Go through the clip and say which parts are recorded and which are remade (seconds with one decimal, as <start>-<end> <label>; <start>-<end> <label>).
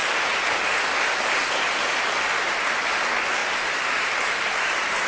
0.0-3.4 recorded; 3.4-5.1 remade